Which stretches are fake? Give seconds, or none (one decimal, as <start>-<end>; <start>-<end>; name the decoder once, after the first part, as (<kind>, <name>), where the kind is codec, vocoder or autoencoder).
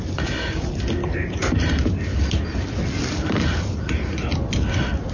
none